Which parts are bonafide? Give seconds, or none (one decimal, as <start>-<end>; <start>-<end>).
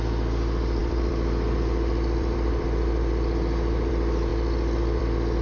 0.0-0.8; 3.9-5.4